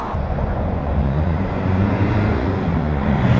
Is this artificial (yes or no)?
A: yes